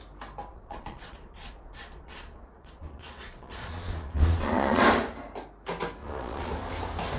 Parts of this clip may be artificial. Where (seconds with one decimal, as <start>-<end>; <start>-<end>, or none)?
0.5-4.8; 6.0-6.5